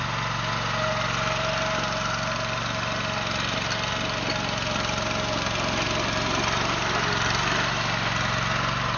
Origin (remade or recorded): recorded